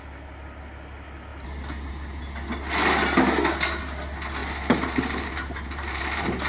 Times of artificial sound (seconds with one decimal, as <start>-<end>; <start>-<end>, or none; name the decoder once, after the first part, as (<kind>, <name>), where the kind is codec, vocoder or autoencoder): 4.4-6.5 (vocoder, BigVGAN v2)